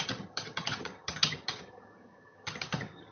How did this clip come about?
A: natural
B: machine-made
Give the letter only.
B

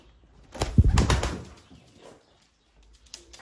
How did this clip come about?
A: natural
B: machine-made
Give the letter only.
A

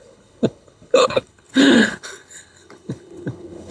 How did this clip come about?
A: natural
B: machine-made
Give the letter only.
B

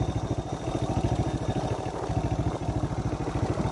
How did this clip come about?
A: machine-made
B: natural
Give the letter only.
B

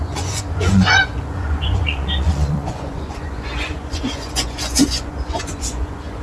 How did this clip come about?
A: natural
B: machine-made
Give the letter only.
B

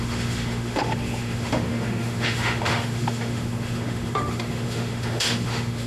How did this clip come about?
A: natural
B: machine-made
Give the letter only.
B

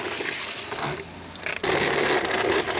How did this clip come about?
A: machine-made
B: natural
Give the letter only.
B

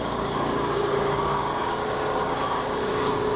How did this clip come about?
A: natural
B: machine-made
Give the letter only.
B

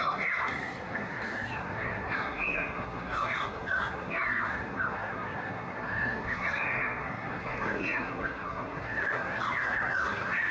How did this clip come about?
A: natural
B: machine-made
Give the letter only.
B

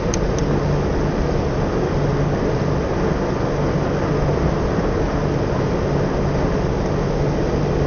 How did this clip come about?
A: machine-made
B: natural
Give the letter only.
B